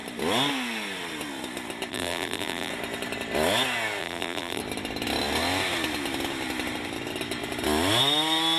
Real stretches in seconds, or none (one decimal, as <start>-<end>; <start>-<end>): 0.0-1.9; 2.7-4.0; 4.6-8.6